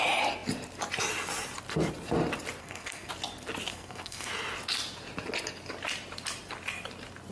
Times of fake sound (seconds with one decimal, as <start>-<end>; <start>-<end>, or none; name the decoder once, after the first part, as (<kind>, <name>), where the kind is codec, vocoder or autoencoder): 2.6-3.1 (codec, SNAC); 3.7-4.3

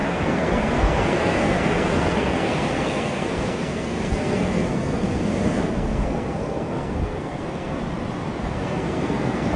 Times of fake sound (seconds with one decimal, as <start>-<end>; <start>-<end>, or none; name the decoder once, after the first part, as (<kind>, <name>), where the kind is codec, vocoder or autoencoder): 0.0-7.8 (codec, SNAC); 8.4-9.6

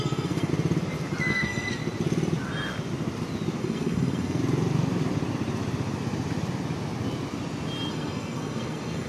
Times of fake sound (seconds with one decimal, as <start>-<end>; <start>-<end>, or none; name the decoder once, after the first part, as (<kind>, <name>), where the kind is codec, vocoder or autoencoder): 0.0-0.5 (codec, SNAC); 1.3-1.8; 3.6-4.4; 7.9-9.1